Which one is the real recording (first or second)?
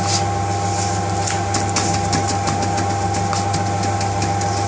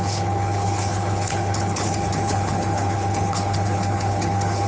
first